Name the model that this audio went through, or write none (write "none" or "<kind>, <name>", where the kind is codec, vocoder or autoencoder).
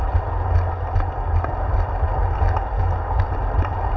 none